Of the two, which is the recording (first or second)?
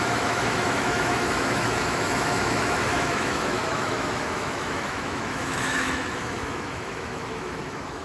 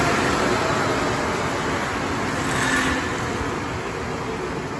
second